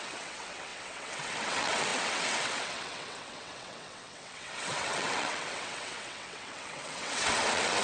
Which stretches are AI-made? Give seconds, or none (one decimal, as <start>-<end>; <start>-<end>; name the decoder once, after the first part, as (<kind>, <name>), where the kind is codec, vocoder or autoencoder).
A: 0.0-7.8 (vocoder, WaveNeXt)